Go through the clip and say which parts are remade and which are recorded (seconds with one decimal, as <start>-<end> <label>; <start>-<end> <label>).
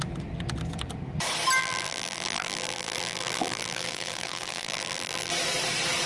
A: 0.0-1.6 recorded; 1.6-5.3 remade; 5.3-6.1 recorded